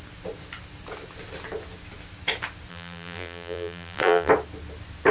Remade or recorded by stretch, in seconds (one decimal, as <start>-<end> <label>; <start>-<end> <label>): 0.0-2.7 recorded; 2.7-4.3 remade; 4.3-5.1 recorded